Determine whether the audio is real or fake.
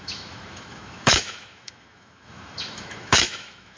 fake